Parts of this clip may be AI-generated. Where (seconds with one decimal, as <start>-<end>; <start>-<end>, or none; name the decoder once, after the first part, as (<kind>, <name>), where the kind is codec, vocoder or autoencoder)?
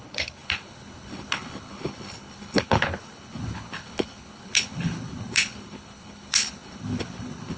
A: 0.0-7.6 (codec, HILCodec)